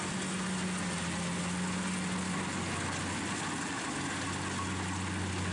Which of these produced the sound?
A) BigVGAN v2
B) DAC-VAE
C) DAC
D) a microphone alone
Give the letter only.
D